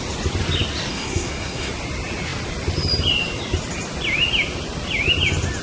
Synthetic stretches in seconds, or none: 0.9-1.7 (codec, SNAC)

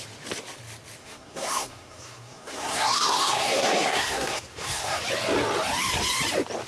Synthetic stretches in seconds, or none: 1.0-5.0 (codec, SNAC)